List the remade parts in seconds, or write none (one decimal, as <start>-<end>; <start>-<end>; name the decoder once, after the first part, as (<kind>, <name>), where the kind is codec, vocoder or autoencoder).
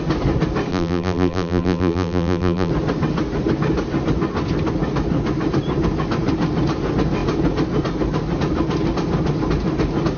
0.7-2.7 (vocoder, BigVGAN v2)